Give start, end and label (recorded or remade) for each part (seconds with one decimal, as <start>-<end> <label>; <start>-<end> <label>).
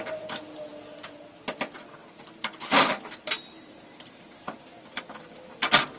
0.0-2.0 recorded; 2.0-5.0 remade; 5.0-6.0 recorded